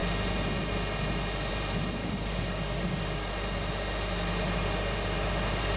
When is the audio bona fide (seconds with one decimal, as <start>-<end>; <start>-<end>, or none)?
0.0-2.0; 3.3-5.8